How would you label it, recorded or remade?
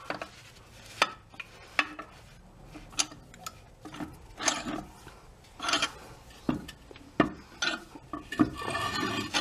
recorded